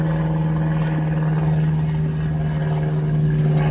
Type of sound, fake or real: real